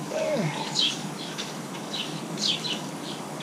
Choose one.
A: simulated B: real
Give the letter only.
A